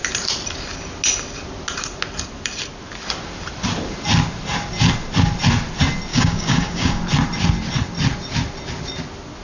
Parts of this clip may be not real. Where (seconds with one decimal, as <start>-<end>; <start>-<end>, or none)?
6.1-7.0